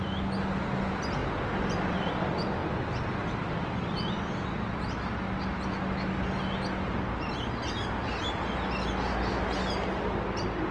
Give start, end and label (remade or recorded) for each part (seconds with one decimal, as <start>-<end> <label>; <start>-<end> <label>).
0.0-1.2 recorded; 1.2-2.1 remade; 2.1-10.7 recorded